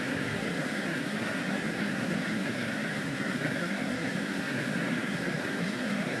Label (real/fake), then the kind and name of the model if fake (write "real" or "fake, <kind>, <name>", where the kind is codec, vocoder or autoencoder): fake, codec, SNAC